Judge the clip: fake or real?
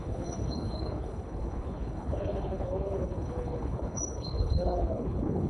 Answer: fake